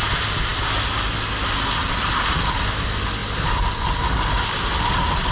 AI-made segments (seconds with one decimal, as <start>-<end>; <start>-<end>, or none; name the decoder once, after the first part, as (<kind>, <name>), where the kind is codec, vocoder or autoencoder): none